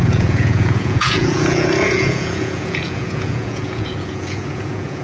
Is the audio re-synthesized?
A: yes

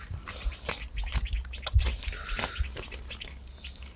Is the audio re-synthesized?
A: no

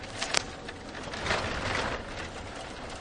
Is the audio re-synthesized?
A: no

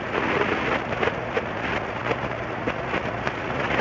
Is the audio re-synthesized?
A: yes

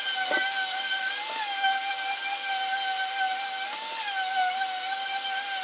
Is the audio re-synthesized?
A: no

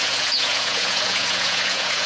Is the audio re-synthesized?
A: yes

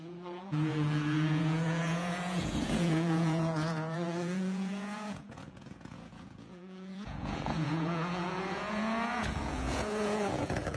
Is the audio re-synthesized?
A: yes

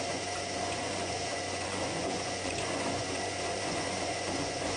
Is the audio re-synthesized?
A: yes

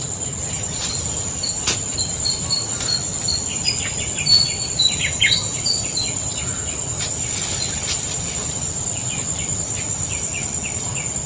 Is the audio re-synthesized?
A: no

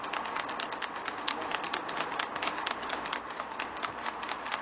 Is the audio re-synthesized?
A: no